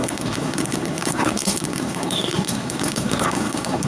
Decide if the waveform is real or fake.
fake